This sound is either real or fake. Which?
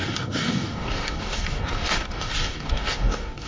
fake